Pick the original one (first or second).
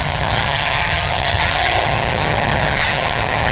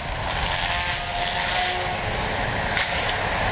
second